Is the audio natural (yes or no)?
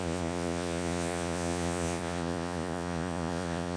no